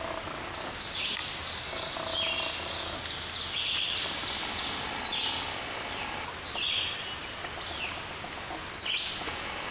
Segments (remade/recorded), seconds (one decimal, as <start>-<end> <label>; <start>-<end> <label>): 0.0-9.7 recorded